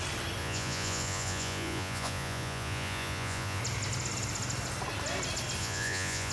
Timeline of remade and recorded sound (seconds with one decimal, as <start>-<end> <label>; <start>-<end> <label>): 0.0-0.4 recorded; 0.4-3.6 remade; 3.6-5.6 recorded; 5.6-6.3 remade